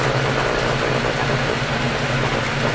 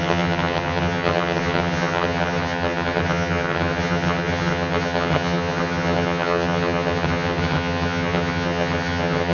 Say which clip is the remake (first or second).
second